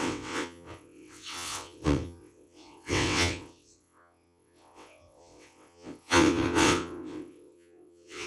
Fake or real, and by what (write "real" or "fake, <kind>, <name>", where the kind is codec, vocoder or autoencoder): fake, vocoder, WaveNeXt